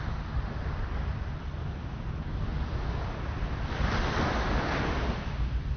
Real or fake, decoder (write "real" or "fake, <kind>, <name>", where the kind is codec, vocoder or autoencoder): real